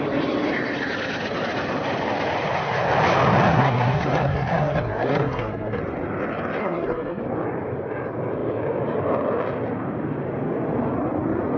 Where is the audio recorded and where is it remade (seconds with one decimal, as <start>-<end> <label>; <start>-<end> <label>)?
0.0-3.5 recorded; 3.5-5.8 remade; 5.8-6.6 recorded; 6.6-7.2 remade; 7.2-11.6 recorded